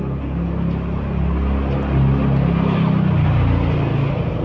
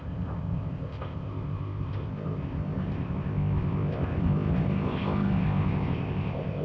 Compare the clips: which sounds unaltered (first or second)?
first